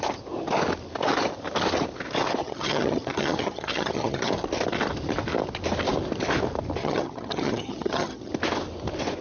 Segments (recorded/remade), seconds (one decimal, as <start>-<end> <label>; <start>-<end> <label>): 0.0-2.4 recorded; 2.4-4.3 remade; 4.3-6.8 recorded; 6.8-8.3 remade; 8.3-9.2 recorded